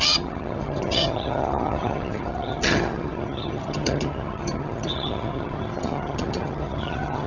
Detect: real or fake fake